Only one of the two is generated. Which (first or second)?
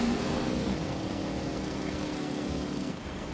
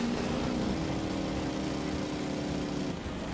first